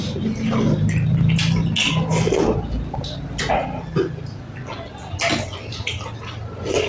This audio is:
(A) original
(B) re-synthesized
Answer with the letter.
A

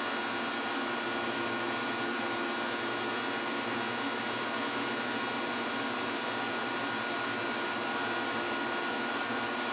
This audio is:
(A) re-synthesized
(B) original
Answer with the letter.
B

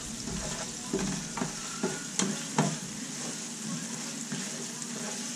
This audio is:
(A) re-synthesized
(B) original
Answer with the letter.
B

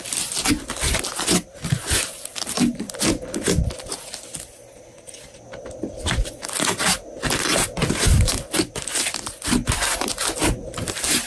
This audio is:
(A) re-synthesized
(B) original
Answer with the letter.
B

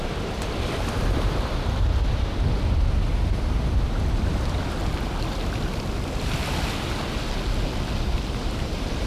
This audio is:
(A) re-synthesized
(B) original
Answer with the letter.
B